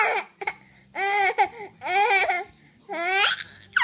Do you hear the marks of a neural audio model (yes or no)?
no